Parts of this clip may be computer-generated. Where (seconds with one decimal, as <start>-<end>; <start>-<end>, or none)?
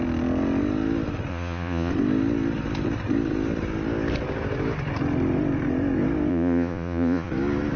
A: 1.3-1.9; 6.3-7.3